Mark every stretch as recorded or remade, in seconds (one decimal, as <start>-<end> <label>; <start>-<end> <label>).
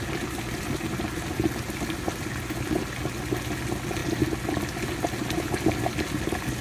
0.0-6.6 recorded